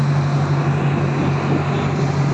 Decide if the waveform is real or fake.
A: real